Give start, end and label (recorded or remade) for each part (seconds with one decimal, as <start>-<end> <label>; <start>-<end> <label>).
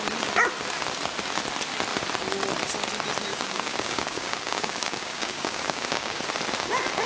0.0-3.3 recorded; 3.3-6.2 remade; 6.2-7.1 recorded